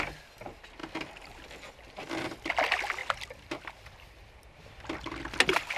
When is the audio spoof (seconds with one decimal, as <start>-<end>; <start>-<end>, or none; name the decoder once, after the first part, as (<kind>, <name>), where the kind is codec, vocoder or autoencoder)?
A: 3.0-4.3 (vocoder, BigVGAN v2)